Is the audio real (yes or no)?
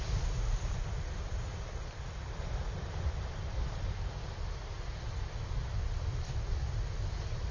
yes